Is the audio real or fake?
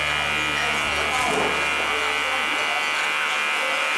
real